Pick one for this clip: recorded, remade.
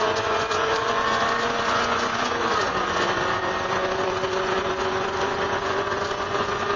remade